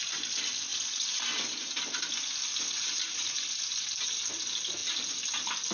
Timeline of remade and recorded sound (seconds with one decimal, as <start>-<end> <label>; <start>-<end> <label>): 0.0-5.7 recorded